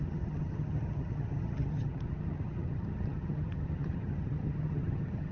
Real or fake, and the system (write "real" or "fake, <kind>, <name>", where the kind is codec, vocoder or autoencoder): fake, vocoder, HiFi-GAN